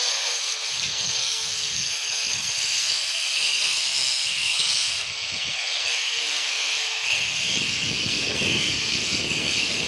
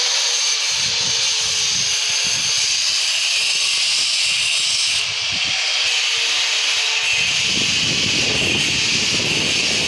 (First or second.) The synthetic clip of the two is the first